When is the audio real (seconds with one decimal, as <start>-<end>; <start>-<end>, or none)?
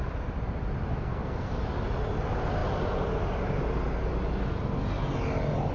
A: 0.0-0.9; 1.6-5.7